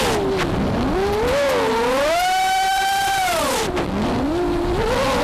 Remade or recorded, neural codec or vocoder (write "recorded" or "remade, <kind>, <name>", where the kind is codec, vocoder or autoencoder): recorded